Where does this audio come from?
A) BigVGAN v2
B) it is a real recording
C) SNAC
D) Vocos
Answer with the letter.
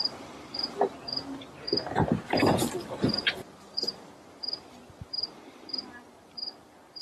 A